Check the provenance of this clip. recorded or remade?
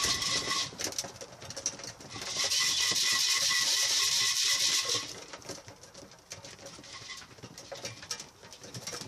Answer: recorded